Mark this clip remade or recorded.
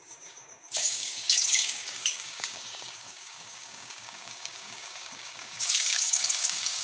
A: remade